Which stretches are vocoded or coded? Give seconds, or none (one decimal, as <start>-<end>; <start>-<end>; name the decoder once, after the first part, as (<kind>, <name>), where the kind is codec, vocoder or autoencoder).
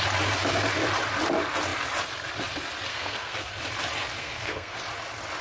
2.9-3.5 (codec, SNAC); 4.2-4.8